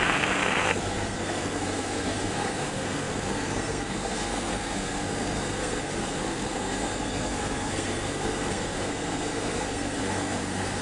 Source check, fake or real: fake